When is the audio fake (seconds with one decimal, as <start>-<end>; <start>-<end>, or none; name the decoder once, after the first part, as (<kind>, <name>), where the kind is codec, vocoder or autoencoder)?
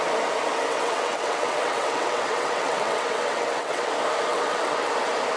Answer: 0.7-3.9 (vocoder, WaveNeXt); 4.3-4.9